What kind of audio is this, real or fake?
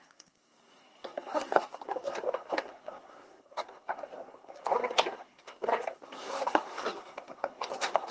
fake